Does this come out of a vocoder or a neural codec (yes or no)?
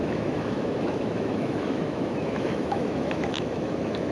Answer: yes